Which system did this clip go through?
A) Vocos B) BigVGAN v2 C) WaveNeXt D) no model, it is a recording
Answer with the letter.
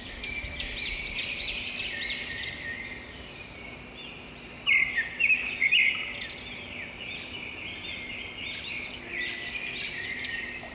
B